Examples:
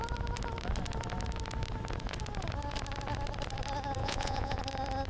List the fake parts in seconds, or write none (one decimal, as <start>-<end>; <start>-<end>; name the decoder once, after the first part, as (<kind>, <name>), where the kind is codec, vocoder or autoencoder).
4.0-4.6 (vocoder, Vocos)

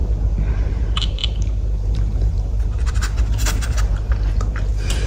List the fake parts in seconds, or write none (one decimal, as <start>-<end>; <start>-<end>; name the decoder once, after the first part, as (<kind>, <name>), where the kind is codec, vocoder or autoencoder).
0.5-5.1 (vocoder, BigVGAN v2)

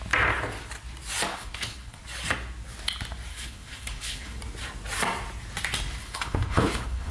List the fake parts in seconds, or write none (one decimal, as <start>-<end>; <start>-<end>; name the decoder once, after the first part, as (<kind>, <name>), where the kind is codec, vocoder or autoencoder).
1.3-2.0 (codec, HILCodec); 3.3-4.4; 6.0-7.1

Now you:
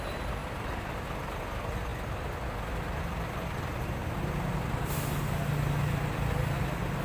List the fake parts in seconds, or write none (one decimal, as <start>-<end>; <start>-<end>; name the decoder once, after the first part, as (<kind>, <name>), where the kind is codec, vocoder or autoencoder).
0.4-1.4 (vocoder, BigVGAN v2)

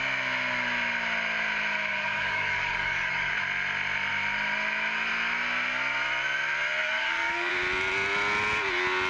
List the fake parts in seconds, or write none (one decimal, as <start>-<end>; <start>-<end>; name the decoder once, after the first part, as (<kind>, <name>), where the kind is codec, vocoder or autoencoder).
1.9-3.3 (codec, DAC); 6.8-7.5

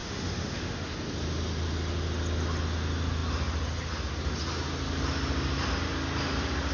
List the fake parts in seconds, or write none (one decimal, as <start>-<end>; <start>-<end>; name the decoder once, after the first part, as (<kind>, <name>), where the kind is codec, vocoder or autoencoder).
0.0-0.9 (autoencoder, DAC-VAE)